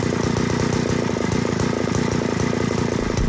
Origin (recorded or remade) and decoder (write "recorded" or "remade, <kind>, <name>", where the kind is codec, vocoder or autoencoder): recorded